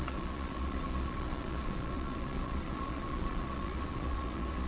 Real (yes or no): no